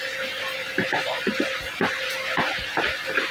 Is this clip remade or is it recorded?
recorded